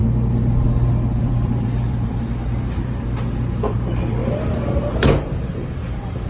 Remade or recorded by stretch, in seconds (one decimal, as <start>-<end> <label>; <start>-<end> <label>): 0.0-1.2 recorded; 1.2-6.3 remade